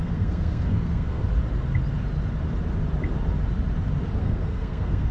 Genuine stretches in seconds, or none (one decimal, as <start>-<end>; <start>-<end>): 1.2-4.2